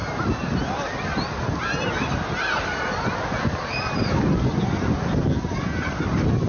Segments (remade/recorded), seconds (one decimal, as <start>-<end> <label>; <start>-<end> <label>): 0.0-6.5 recorded